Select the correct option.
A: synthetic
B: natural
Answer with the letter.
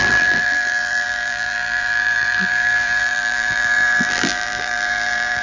A